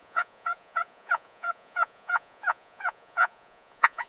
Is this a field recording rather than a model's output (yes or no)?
no